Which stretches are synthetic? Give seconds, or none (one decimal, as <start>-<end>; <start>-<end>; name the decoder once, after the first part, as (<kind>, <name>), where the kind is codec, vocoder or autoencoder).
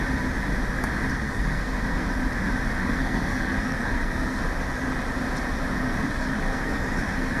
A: 1.1-2.1 (codec, SNAC); 2.8-4.4; 5.8-7.4